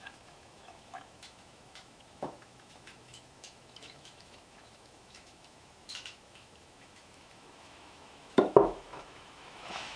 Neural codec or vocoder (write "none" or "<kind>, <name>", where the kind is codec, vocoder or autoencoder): autoencoder, DAC-VAE